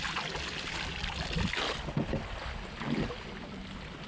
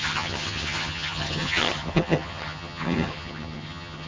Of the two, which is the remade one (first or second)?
second